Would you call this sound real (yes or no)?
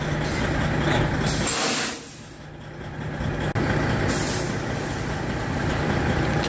yes